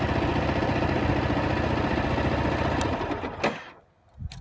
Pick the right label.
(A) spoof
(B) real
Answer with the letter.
B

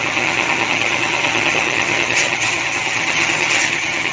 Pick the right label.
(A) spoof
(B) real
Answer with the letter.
A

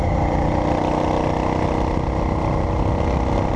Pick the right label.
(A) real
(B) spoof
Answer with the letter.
A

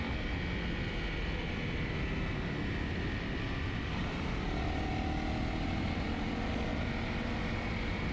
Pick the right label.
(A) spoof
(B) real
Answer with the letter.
B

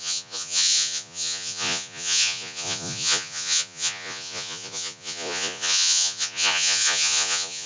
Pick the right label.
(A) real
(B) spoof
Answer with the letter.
B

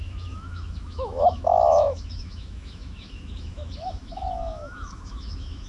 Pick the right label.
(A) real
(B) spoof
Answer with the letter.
B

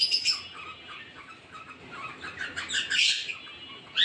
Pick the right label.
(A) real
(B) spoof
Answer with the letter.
A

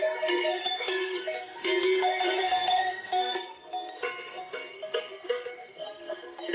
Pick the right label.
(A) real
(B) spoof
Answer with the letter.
B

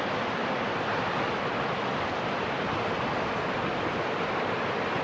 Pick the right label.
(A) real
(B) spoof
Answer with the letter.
A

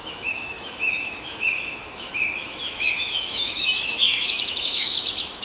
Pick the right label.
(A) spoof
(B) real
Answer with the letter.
A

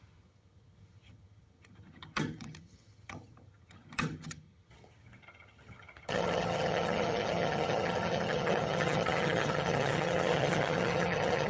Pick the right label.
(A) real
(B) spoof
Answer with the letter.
B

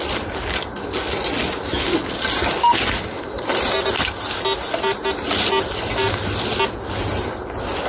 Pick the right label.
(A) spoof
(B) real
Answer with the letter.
B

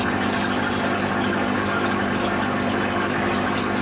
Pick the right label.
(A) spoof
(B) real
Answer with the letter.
B